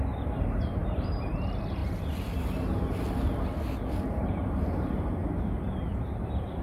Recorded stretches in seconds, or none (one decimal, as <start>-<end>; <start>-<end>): 1.8-4.1; 5.2-5.7